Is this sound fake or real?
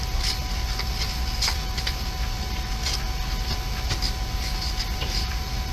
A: real